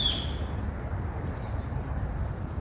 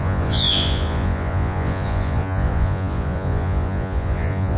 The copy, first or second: second